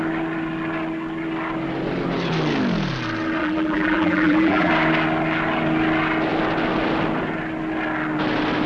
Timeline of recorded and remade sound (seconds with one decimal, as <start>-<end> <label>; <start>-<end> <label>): 0.0-3.4 recorded; 3.4-4.7 remade; 4.7-8.7 recorded

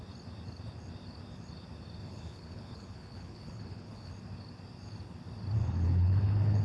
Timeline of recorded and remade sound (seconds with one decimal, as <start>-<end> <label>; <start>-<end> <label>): 0.0-2.0 recorded; 2.0-4.1 remade; 4.1-5.6 recorded; 5.6-6.6 remade

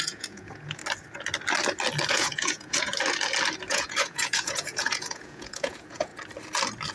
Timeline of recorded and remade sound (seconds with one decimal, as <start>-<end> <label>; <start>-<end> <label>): 0.0-0.8 remade; 0.8-2.1 recorded; 2.1-2.9 remade; 2.9-3.7 recorded; 3.7-6.1 remade; 6.1-6.9 recorded

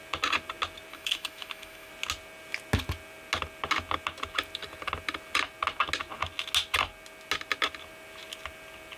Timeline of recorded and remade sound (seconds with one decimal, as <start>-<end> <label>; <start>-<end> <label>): 0.0-0.9 recorded; 0.9-1.9 remade; 1.9-9.0 recorded

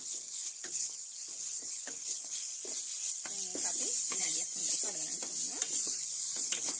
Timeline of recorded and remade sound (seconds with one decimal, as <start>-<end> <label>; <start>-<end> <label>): 0.0-2.5 remade; 2.5-4.0 recorded; 4.0-4.6 remade; 4.6-5.8 recorded; 5.8-6.8 remade

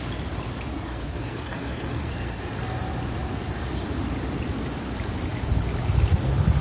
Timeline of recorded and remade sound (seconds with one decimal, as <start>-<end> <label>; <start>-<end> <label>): 0.0-0.7 recorded; 0.7-2.4 remade; 2.4-6.6 recorded

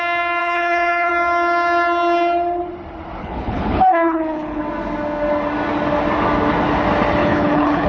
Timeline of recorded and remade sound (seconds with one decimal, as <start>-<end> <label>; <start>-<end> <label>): 0.0-0.4 recorded; 0.4-1.1 remade; 1.1-3.2 recorded; 3.2-4.6 remade; 4.6-7.2 recorded; 7.2-7.9 remade

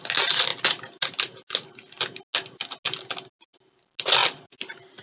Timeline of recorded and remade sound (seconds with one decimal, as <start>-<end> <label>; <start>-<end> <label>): 0.0-5.0 recorded